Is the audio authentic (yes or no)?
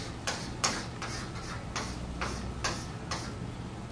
yes